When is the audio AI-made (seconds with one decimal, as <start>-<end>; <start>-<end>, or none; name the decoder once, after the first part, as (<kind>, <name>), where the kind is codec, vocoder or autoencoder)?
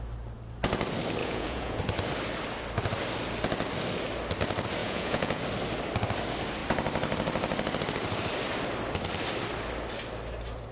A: 1.2-1.8 (vocoder, Vocos); 4.8-5.4